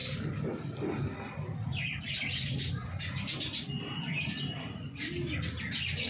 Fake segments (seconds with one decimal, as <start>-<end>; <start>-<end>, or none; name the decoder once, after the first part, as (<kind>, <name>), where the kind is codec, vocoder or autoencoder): none